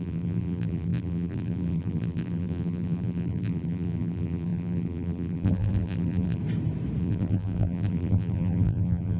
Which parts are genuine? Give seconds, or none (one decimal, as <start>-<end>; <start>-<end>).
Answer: 6.4-7.0